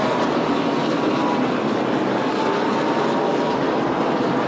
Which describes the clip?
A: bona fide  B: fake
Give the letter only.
B